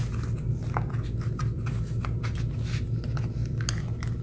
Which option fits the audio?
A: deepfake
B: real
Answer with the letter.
B